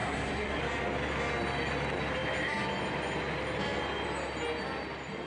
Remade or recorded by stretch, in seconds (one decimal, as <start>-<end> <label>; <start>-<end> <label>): 0.0-0.6 remade; 0.6-5.3 recorded